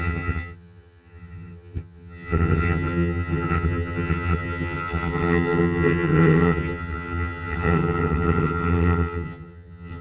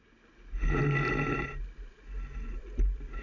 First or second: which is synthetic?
first